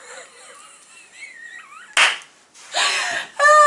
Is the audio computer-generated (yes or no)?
no